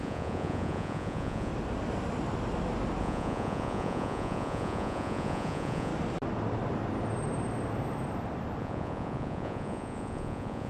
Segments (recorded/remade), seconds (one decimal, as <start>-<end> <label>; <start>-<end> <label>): 0.0-1.5 remade; 1.5-3.0 recorded; 3.0-5.9 remade; 5.9-8.6 recorded; 8.6-10.7 remade